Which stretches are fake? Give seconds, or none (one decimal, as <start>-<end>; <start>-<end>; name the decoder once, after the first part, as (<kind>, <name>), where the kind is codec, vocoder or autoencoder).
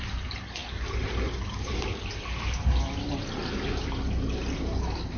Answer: none